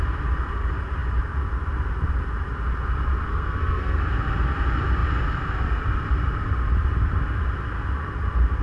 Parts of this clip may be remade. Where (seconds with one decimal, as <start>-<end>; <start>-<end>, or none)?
3.3-4.0